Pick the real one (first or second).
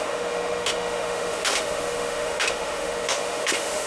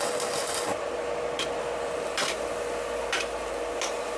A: second